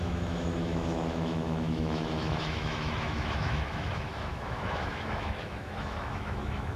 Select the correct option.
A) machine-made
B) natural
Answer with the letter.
A